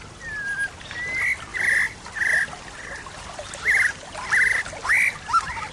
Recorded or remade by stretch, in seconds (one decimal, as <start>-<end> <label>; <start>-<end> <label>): 0.0-5.7 recorded